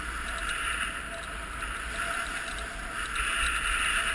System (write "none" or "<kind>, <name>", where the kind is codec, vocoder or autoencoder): none